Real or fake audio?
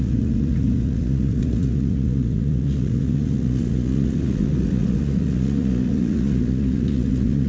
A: fake